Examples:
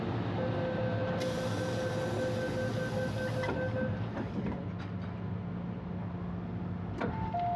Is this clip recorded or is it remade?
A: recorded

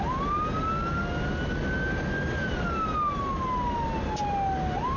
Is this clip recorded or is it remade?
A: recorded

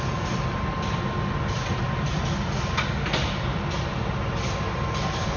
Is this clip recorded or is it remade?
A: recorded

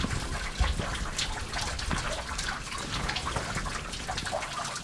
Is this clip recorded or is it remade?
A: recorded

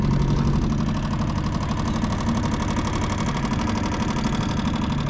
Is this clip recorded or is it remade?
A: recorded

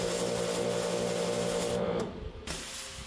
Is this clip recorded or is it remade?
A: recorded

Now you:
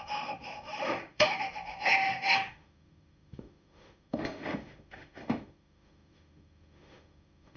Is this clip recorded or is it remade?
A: remade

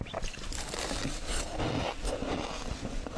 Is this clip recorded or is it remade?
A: recorded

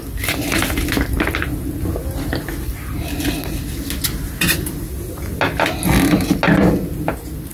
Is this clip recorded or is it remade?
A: recorded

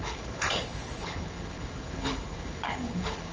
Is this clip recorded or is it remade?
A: remade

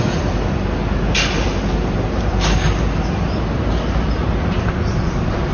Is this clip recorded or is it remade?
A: recorded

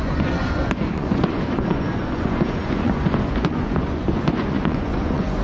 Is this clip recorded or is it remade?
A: remade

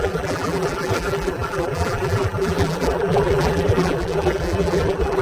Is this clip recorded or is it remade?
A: remade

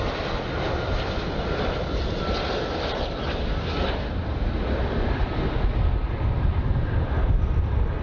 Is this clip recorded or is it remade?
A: recorded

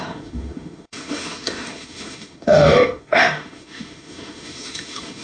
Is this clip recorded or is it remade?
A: remade